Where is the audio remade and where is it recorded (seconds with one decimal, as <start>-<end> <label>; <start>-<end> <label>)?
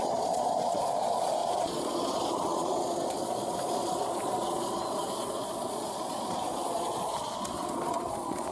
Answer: 0.0-8.5 remade